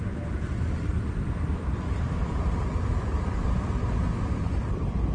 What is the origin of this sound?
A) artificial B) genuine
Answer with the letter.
A